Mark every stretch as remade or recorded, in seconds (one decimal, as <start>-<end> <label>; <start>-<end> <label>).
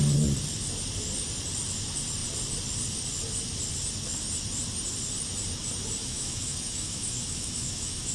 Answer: 0.0-6.0 recorded; 6.0-8.1 remade